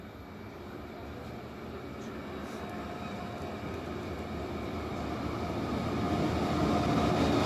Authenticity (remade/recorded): recorded